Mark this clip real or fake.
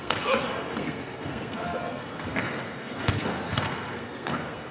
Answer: fake